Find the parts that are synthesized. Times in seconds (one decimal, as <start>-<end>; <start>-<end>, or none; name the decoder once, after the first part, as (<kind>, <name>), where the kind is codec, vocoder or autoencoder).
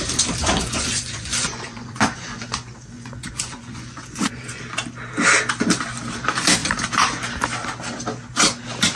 0.4-4.6 (vocoder, Vocos)